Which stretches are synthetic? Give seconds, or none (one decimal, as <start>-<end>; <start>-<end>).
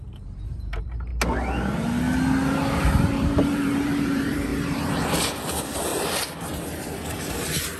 0.0-1.1; 2.8-4.5; 5.2-5.9